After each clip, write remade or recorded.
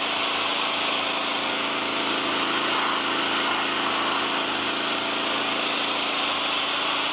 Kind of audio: recorded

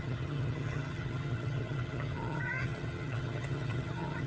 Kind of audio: remade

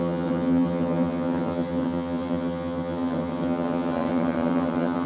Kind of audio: remade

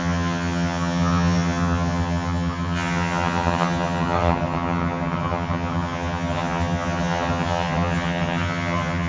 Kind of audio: remade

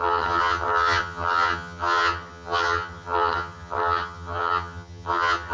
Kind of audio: remade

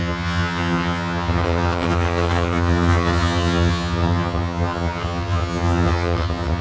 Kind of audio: remade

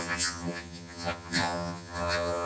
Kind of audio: remade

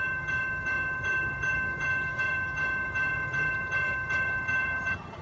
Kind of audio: remade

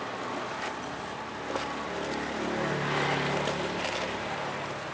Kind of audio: recorded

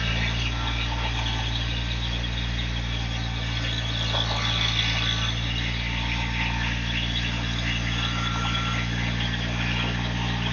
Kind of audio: recorded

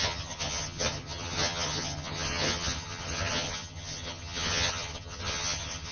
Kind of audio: remade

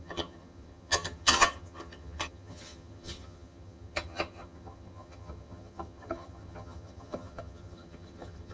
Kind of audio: remade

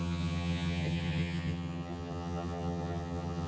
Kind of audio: remade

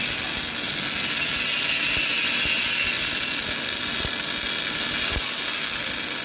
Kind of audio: recorded